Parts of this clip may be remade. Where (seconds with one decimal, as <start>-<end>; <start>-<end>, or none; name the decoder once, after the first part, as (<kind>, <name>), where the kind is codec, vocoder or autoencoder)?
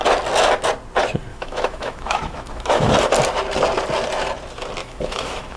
1.3-2.9 (autoencoder, DAC-VAE); 4.8-5.6